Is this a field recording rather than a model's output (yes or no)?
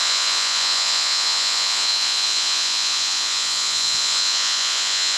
no